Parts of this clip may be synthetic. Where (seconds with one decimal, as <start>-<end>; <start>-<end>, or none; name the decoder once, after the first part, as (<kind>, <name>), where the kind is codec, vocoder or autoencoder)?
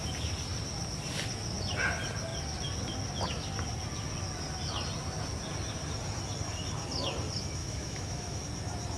7.6-8.4 (autoencoder, DAC-VAE)